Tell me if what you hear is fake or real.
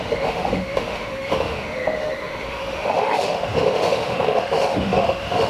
fake